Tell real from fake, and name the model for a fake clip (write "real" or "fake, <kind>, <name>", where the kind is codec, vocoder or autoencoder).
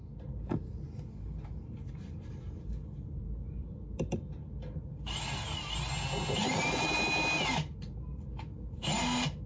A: real